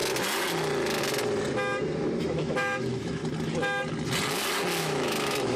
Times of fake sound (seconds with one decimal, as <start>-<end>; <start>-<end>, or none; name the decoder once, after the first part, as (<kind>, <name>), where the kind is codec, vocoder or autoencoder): 2.2-3.2 (autoencoder, DAC-VAE); 4.8-5.6